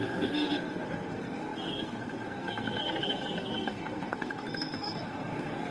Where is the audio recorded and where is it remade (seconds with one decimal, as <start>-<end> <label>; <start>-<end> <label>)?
0.0-5.7 remade